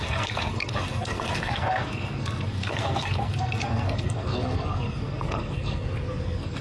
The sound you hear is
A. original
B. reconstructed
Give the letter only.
B